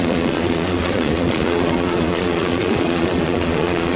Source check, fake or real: fake